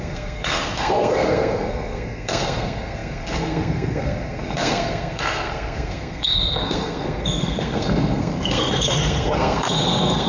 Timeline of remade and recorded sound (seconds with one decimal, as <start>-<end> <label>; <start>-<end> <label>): 0.0-10.3 remade